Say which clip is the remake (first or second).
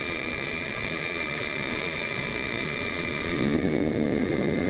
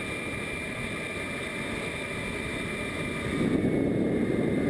first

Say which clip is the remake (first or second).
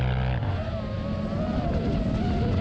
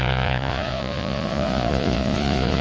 second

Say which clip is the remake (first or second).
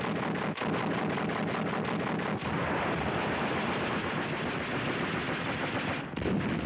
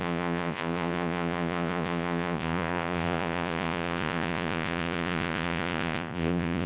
second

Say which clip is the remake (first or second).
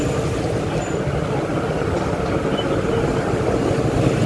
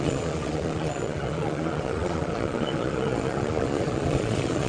second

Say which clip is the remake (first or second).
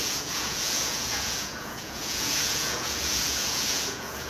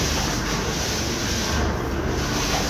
first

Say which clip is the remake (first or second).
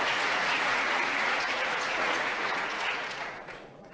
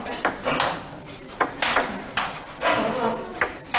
first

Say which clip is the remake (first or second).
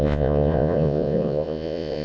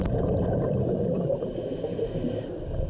first